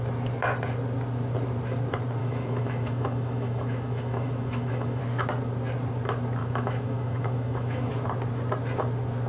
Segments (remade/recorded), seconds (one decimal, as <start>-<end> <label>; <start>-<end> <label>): 0.0-2.2 recorded; 2.2-5.0 remade; 5.0-6.4 recorded; 6.4-7.9 remade; 7.9-9.3 recorded